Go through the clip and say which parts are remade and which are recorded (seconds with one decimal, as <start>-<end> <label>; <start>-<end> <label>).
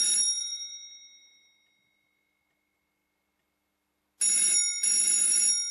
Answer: 0.0-0.4 recorded; 0.4-1.5 remade; 1.5-5.7 recorded